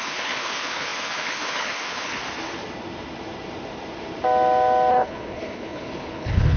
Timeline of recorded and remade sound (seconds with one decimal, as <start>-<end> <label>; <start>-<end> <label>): 0.0-2.2 remade; 2.2-4.9 recorded; 4.9-6.6 remade